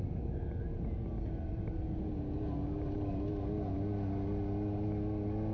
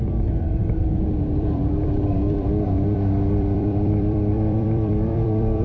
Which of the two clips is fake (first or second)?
second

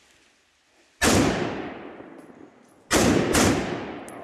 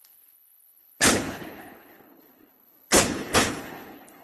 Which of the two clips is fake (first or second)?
second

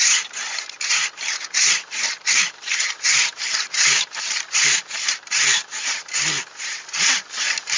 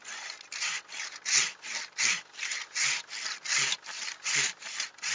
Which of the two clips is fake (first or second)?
first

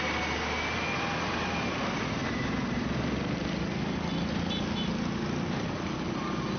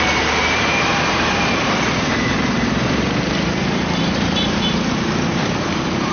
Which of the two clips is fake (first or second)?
second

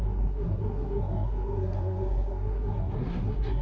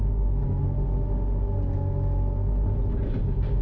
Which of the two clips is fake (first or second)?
first